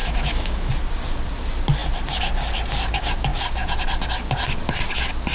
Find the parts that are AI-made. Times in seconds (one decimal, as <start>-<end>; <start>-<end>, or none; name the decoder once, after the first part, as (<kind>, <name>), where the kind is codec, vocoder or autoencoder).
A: 0.0-0.7 (autoencoder, DAC-VAE)